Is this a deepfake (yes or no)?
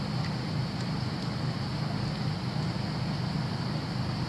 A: yes